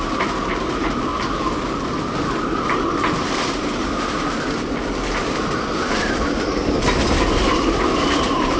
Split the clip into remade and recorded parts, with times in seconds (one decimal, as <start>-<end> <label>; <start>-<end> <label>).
0.0-1.1 remade; 1.1-2.4 recorded; 2.4-3.7 remade; 3.7-7.4 recorded; 7.4-8.6 remade